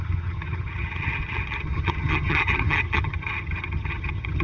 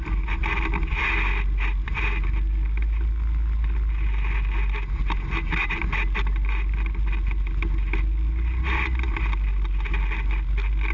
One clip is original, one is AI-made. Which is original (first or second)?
second